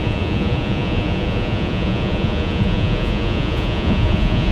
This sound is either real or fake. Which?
fake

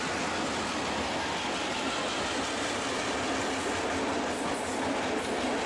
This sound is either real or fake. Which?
real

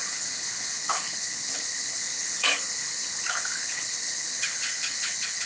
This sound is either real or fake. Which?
fake